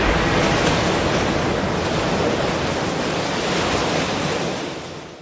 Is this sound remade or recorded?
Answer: recorded